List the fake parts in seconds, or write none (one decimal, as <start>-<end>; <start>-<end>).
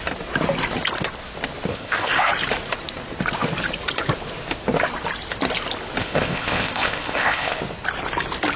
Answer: 1.7-2.3; 6.0-7.6